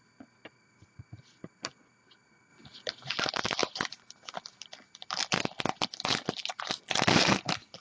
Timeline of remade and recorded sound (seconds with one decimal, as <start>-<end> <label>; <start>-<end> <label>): 0.0-7.8 recorded